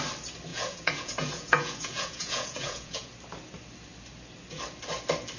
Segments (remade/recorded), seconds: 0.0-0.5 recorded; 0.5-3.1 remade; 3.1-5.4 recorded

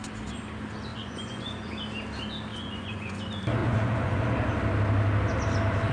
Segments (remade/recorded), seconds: 0.0-0.9 recorded; 0.9-1.7 remade; 1.7-2.5 recorded; 2.5-3.2 remade; 3.2-3.6 recorded; 3.6-4.2 remade; 4.2-5.9 recorded

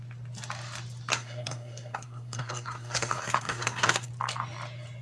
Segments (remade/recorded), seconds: 0.0-1.1 recorded; 1.1-4.1 remade; 4.1-5.0 recorded

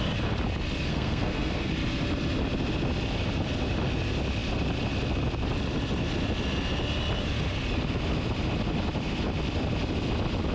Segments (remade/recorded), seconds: 0.0-0.9 recorded; 0.9-1.7 remade; 1.7-10.5 recorded

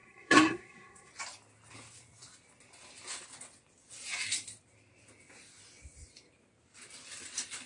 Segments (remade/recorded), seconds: 0.0-1.1 remade; 1.1-7.7 recorded

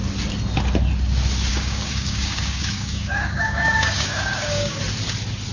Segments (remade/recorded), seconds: 0.0-1.5 recorded; 1.5-4.8 remade; 4.8-5.5 recorded